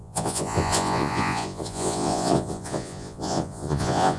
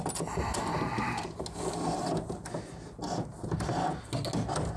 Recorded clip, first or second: second